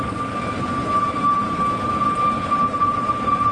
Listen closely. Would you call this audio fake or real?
real